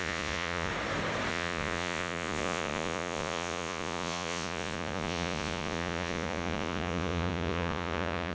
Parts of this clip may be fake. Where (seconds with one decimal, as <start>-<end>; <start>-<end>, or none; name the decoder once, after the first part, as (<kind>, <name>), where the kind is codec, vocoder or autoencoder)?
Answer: 0.0-0.7 (vocoder, Vocos); 1.3-8.3